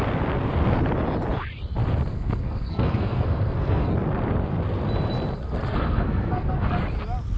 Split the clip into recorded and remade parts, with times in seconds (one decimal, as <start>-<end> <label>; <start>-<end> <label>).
0.0-2.1 recorded; 2.1-3.9 remade; 3.9-5.7 recorded; 5.7-6.7 remade; 6.7-7.4 recorded